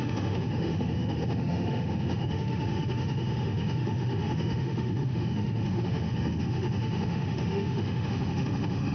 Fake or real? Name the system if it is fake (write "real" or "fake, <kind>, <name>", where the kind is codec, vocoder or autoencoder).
fake, autoencoder, DAC-VAE